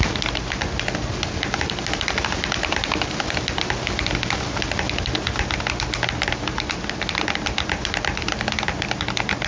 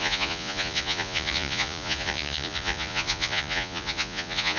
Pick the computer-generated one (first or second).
second